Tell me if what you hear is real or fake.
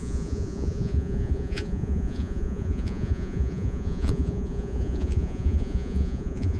fake